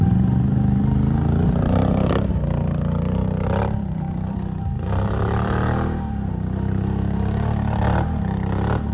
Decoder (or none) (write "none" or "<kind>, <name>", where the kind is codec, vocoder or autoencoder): vocoder, BigVGAN v2